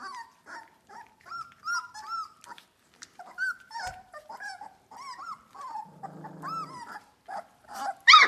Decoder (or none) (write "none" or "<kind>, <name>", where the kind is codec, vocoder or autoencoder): none